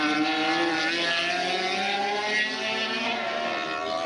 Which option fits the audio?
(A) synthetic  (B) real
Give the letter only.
B